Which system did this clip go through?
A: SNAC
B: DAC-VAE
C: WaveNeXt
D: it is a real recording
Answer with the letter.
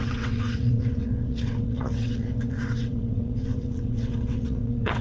C